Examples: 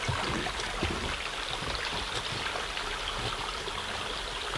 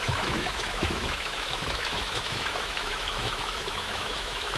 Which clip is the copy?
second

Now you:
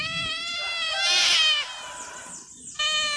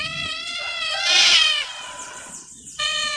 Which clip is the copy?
second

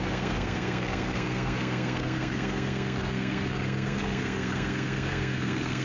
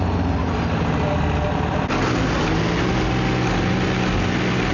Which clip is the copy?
first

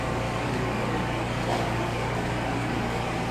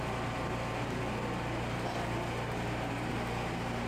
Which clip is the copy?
first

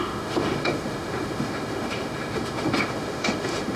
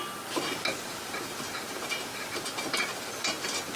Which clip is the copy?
first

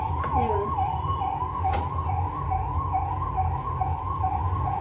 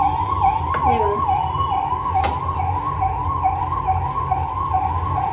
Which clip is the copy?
first